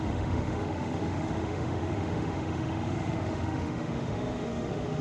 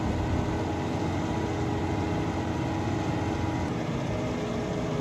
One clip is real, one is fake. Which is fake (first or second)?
first